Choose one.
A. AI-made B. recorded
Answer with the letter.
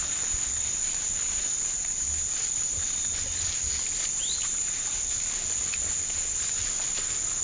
B